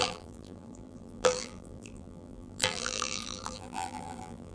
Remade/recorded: remade